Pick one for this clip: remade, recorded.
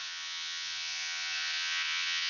remade